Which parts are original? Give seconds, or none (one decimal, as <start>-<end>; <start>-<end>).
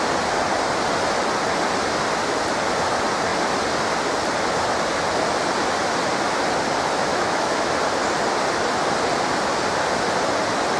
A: 0.0-7.1; 7.7-10.8